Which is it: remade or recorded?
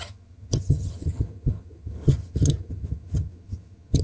remade